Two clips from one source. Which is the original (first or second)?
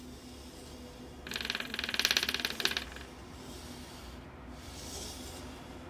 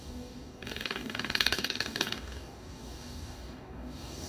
first